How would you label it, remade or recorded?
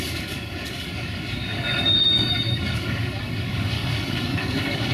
remade